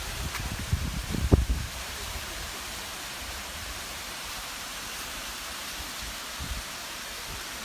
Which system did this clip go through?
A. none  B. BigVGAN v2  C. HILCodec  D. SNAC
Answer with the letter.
B